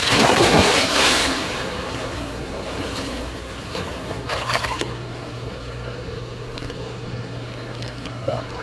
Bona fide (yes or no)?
no